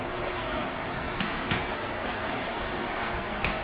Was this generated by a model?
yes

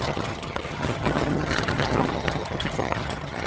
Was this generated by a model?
yes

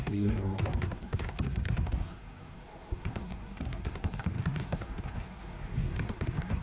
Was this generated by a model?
yes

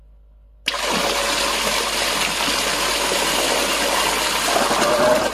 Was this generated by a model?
no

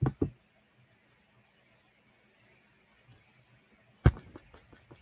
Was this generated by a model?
no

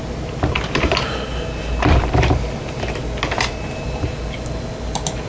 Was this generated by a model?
no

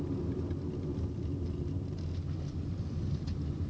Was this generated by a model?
no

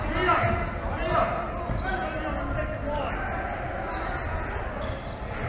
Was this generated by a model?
no